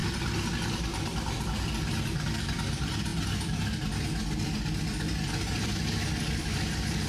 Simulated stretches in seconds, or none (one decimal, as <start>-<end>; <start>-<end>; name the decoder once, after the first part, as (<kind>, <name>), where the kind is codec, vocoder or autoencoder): 0.0-3.1 (vocoder, BigVGAN v2); 5.6-7.1